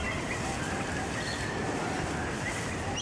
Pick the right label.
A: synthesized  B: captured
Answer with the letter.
B